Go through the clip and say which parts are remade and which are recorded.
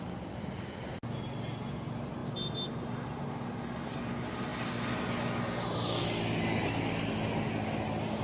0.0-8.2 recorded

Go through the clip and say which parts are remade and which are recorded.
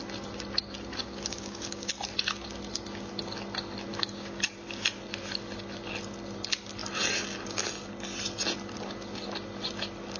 0.0-1.0 recorded; 1.0-1.9 remade; 1.9-3.9 recorded; 3.9-4.4 remade; 4.4-10.2 recorded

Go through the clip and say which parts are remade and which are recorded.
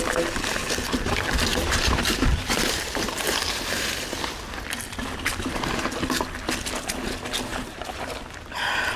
0.0-1.5 recorded; 1.5-3.7 remade; 3.7-7.5 recorded; 7.5-8.4 remade; 8.4-9.0 recorded